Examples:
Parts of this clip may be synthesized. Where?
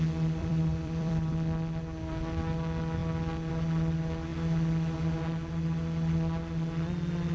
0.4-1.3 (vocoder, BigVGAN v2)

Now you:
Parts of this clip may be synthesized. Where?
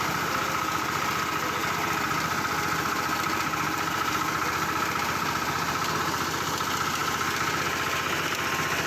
1.6-6.0 (vocoder, BigVGAN v2)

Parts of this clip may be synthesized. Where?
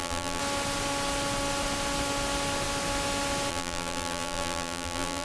0.0-0.4 (vocoder, BigVGAN v2); 3.5-5.2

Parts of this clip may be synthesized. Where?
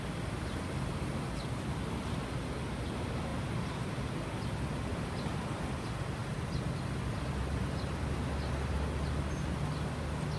3.3-4.0 (vocoder, BigVGAN v2)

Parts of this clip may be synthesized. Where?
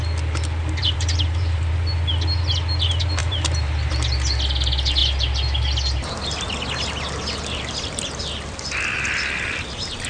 0.8-1.7 (vocoder, BigVGAN v2); 3.2-3.9